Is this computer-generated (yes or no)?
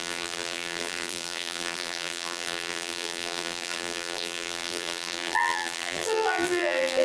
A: yes